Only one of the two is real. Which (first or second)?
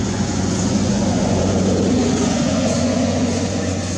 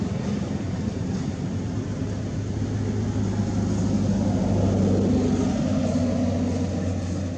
second